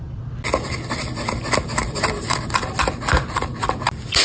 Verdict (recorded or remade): recorded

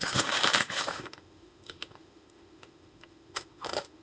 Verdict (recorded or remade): remade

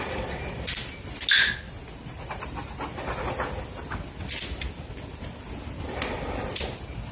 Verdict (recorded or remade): recorded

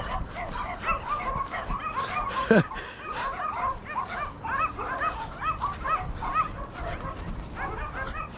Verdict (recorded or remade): recorded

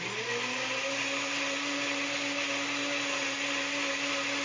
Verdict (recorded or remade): recorded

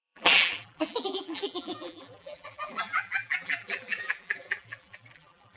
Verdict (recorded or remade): remade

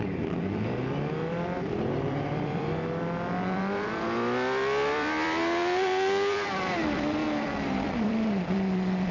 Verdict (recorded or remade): remade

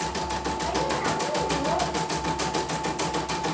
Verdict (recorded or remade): recorded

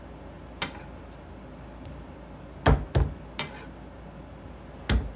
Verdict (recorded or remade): recorded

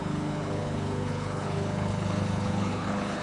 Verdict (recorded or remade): remade